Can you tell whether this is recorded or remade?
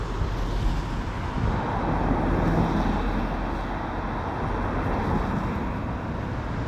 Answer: recorded